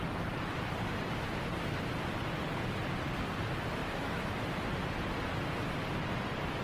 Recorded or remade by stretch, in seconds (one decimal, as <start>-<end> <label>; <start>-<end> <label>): 0.0-3.8 recorded; 3.8-4.3 remade; 4.3-6.6 recorded